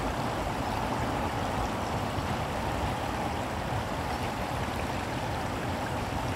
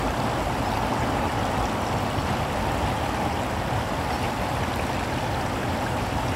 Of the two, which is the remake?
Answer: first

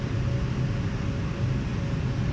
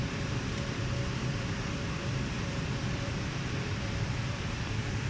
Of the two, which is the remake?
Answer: second